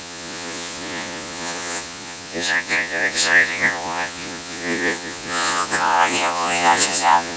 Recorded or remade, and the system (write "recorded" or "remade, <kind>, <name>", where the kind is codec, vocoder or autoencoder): remade, vocoder, Vocos